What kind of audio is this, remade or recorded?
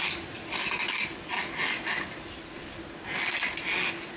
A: recorded